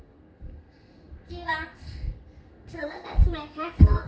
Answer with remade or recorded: remade